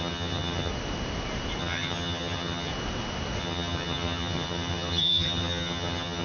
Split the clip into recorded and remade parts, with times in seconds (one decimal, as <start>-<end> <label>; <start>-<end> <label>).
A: 0.0-0.7 remade; 0.7-1.6 recorded; 1.6-2.7 remade; 2.7-3.4 recorded; 3.4-6.2 remade